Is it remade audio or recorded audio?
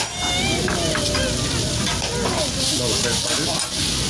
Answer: recorded